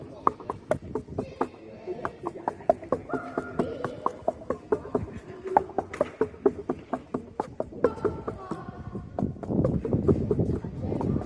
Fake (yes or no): no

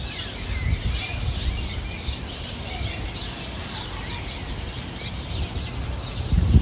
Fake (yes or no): no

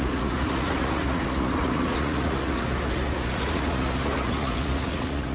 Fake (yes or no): yes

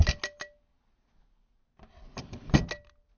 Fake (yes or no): no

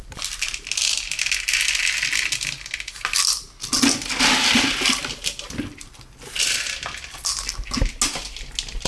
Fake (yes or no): no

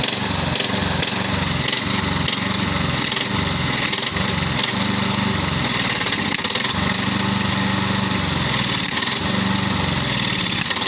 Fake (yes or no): no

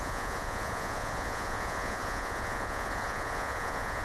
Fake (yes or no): yes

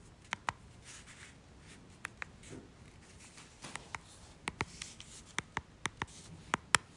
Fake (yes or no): no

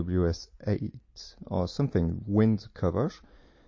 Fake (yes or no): no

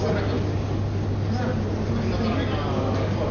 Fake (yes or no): no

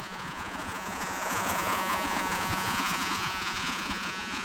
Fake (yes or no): yes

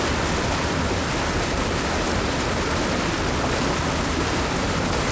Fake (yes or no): no